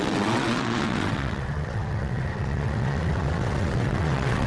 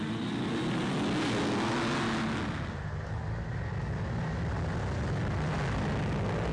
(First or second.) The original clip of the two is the second